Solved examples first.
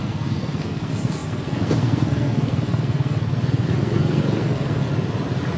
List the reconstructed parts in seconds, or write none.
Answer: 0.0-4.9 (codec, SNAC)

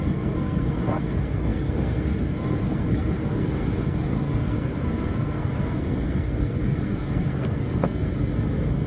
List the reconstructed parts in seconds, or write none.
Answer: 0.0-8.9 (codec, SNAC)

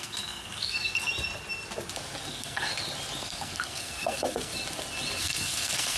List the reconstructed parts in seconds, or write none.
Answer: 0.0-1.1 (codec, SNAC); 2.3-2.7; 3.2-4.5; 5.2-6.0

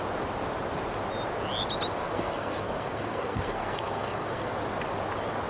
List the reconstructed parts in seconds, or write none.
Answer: 2.0-4.5 (codec, SNAC)

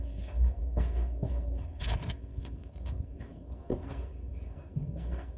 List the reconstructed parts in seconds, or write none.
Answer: 0.0-5.4 (codec, SNAC)

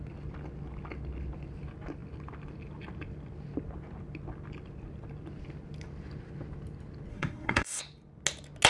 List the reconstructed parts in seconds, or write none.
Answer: 7.1-7.8 (codec, SNAC)

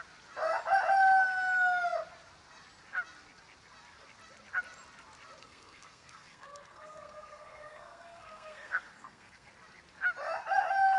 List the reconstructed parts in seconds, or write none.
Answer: 5.4-9.5 (codec, SNAC)

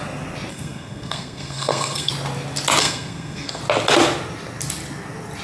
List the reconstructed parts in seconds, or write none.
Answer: 0.5-2.1 (codec, SNAC); 2.8-3.6